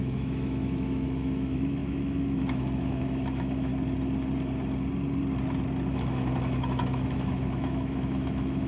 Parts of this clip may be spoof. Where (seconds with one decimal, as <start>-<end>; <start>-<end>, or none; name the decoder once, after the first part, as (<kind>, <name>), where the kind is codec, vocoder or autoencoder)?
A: 0.0-3.7 (autoencoder, DAC-VAE); 5.9-8.7